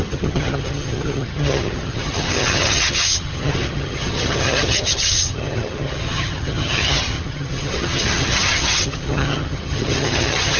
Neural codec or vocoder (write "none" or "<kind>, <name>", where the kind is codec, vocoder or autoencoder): vocoder, HiFi-GAN